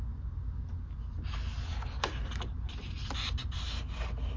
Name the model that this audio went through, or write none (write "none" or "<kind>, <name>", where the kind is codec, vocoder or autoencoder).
none